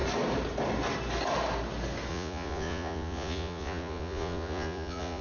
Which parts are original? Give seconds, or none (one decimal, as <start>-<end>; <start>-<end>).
0.0-2.1